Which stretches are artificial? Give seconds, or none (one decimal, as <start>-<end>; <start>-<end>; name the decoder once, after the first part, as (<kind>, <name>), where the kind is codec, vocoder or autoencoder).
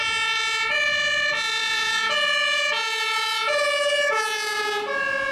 1.6-4.8 (vocoder, Vocos)